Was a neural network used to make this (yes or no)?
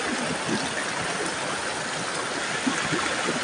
no